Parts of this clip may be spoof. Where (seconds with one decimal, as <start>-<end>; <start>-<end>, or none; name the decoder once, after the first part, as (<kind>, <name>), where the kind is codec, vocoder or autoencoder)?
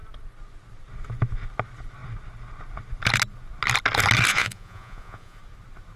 4.3-5.4 (vocoder, Vocos)